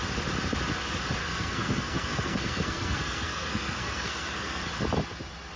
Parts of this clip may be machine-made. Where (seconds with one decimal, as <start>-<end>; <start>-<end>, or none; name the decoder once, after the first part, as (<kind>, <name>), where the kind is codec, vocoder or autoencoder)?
1.2-4.6 (codec, SNAC)